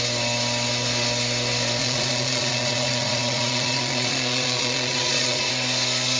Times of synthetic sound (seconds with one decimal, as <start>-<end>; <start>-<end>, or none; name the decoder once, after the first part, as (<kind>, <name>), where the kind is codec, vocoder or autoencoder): 1.8-5.5 (vocoder, Vocos)